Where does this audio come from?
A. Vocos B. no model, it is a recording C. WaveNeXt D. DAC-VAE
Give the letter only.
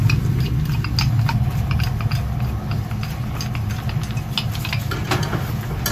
B